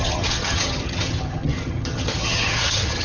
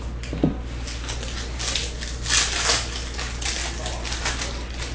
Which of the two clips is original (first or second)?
second